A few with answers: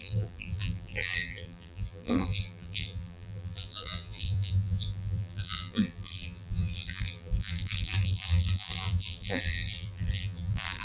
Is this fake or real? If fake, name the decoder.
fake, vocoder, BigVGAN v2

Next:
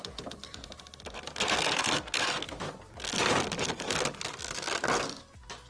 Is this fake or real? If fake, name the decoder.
real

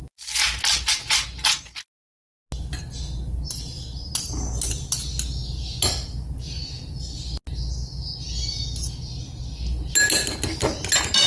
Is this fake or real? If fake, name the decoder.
real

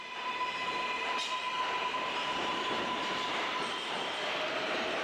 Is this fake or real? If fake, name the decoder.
fake, vocoder, BigVGAN v2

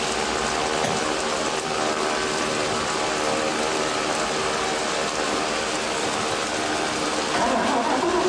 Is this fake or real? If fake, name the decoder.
fake, vocoder, BigVGAN v2